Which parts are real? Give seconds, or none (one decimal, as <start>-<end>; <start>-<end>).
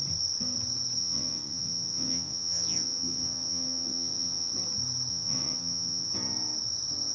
0.0-1.0; 4.5-5.1; 6.1-7.1